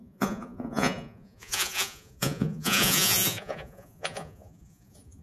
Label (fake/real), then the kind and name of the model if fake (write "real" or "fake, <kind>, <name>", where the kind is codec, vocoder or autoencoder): fake, vocoder, Vocos